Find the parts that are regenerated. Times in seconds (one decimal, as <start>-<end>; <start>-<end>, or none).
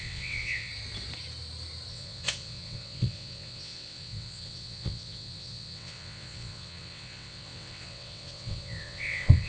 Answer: 0.0-0.7; 1.9-9.5